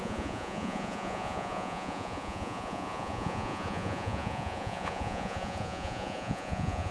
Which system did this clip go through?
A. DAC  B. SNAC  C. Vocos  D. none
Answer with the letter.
C